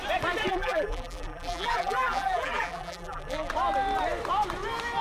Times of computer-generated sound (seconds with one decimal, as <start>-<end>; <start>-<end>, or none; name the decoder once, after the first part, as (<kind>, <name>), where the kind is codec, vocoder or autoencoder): 0.5-3.5 (vocoder, BigVGAN v2)